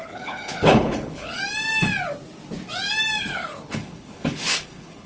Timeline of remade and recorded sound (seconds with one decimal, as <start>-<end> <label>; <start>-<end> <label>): 0.0-1.4 remade; 1.4-3.2 recorded; 3.2-5.1 remade